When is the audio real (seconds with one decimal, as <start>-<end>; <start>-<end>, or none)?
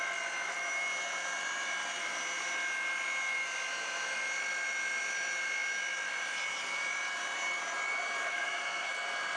0.0-8.3; 8.9-9.4